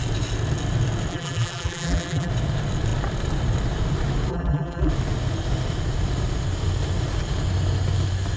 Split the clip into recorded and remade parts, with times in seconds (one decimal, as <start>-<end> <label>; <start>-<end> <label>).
0.0-1.1 recorded; 1.1-2.3 remade; 2.3-4.3 recorded; 4.3-4.9 remade; 4.9-8.4 recorded